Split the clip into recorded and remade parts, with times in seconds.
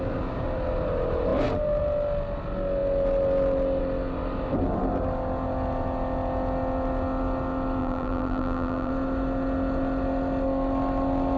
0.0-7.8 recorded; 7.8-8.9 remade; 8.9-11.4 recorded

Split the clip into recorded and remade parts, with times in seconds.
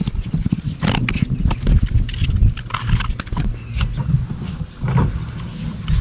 0.0-6.0 recorded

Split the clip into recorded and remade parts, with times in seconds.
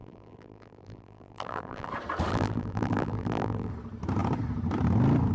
0.0-1.9 remade; 1.9-2.3 recorded; 2.3-3.7 remade; 3.7-5.3 recorded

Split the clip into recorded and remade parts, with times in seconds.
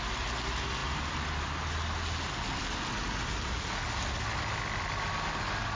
0.0-5.8 recorded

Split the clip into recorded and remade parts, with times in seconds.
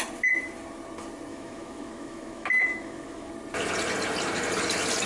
0.0-1.3 recorded; 1.3-3.3 remade; 3.3-5.1 recorded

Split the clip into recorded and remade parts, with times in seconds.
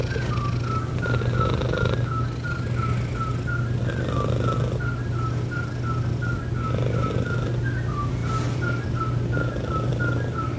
0.0-10.6 recorded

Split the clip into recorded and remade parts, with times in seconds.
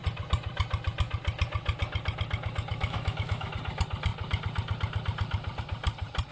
0.0-2.7 recorded; 2.7-3.5 remade; 3.5-6.3 recorded